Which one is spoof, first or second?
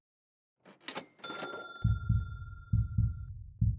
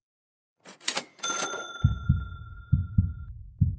second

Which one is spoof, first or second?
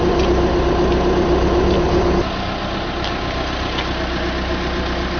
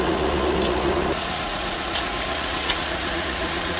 second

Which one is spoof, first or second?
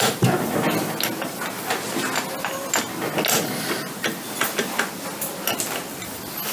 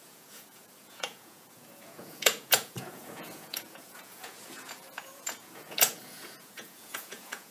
second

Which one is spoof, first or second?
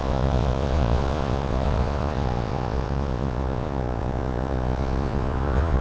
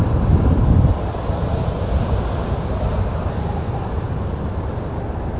first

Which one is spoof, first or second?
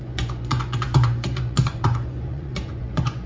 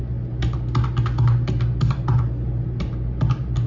first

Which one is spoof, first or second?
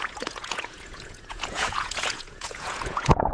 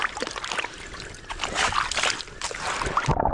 first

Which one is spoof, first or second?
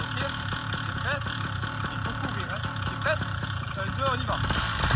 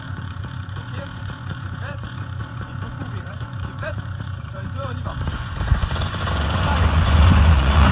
second